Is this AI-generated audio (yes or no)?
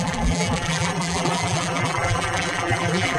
yes